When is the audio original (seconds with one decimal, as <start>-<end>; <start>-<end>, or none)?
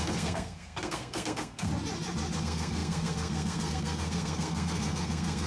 1.7-2.4